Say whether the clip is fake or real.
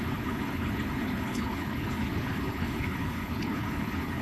fake